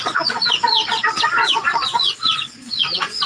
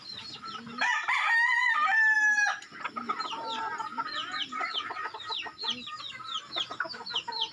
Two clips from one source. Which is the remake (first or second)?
first